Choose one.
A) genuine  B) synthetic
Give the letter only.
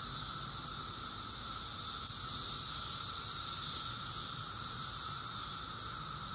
A